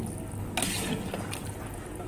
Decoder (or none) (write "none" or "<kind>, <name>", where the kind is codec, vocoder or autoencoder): none